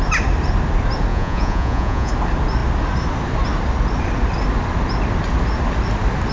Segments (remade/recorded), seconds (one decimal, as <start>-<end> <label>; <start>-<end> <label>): 0.0-1.1 recorded; 1.1-2.1 remade; 2.1-6.3 recorded